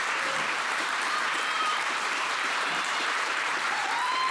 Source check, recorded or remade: remade